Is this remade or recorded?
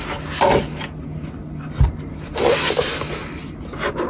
recorded